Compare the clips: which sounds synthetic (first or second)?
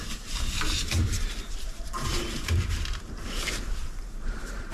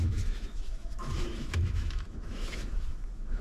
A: second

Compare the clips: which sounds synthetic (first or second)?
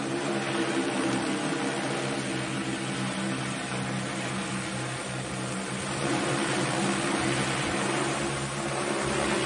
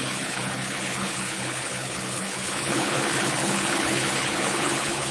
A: second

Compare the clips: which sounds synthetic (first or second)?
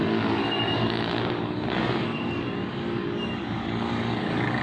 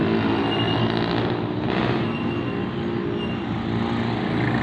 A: first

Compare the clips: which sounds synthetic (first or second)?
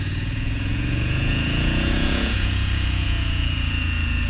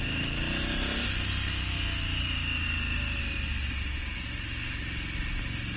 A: first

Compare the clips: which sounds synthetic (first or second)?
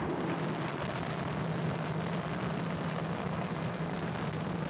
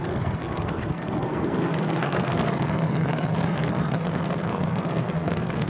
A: second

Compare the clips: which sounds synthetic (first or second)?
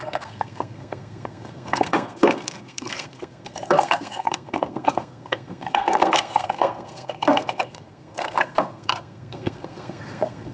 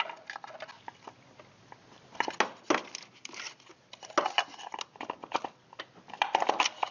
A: first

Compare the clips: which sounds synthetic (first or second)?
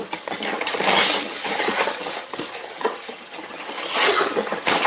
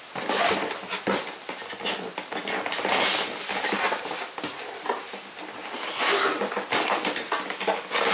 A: first